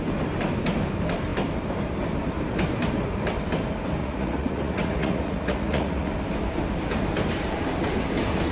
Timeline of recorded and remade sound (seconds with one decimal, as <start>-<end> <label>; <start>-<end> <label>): 0.0-4.0 recorded; 4.0-6.1 remade; 6.1-8.5 recorded